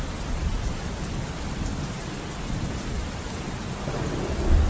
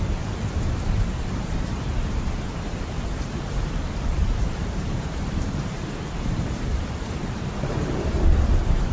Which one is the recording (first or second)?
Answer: first